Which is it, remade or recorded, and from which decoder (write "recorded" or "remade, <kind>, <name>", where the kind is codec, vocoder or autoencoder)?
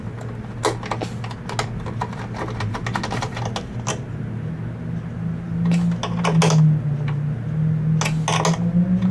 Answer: recorded